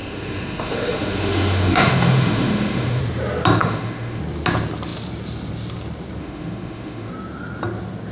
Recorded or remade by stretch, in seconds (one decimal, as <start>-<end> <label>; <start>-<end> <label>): 0.0-3.0 remade; 3.0-3.6 recorded; 3.6-4.2 remade; 4.2-6.2 recorded; 6.2-7.1 remade; 7.1-8.1 recorded